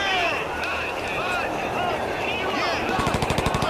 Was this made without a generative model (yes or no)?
yes